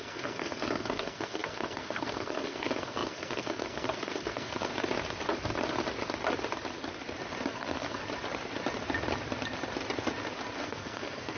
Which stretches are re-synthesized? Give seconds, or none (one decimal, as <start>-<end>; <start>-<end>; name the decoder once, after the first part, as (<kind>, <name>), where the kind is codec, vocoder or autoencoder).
0.0-4.7 (codec, SNAC); 7.5-8.0; 10.6-11.4